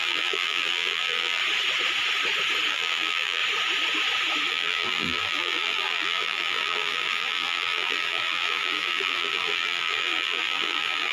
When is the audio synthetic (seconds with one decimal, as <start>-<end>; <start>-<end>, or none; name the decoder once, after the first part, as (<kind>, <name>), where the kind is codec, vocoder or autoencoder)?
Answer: 0.0-1.4 (vocoder, BigVGAN v2); 2.7-3.4; 4.5-11.1